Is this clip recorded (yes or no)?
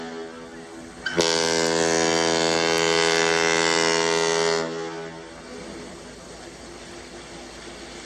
yes